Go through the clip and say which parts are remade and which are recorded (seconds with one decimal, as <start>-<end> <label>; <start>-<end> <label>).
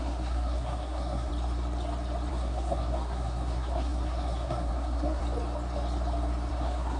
0.0-1.3 remade; 1.3-2.3 recorded; 2.3-5.2 remade; 5.2-6.5 recorded; 6.5-7.0 remade